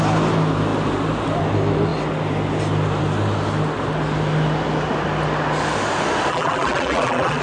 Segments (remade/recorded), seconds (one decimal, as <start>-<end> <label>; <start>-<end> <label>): 0.0-6.3 recorded; 6.3-7.4 remade